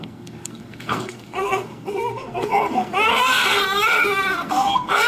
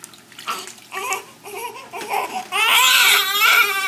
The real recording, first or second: second